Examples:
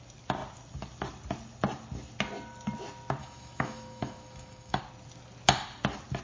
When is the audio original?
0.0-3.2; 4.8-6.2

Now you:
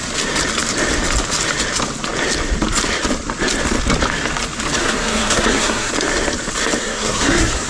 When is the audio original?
0.0-4.8; 5.9-6.8